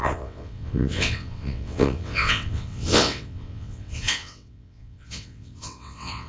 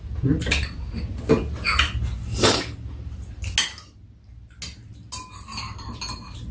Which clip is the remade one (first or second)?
first